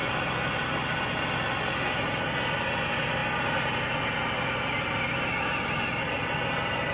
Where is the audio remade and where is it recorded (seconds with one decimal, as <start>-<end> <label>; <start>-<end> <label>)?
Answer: 0.0-6.9 recorded